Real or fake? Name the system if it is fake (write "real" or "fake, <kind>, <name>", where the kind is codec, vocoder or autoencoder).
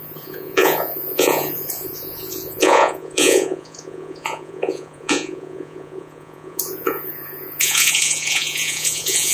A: fake, vocoder, Vocos